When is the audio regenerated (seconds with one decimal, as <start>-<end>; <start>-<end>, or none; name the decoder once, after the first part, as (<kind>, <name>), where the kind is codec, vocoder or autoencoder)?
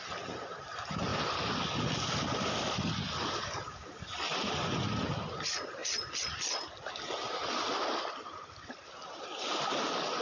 none